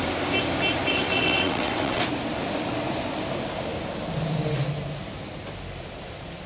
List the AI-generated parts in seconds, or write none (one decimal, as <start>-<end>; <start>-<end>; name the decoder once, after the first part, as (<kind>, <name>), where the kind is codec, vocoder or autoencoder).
0.9-2.0 (vocoder, WaveNeXt)